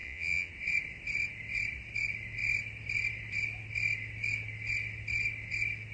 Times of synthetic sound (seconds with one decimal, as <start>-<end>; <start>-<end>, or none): 0.0-0.5